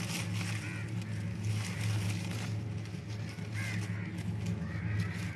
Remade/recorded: recorded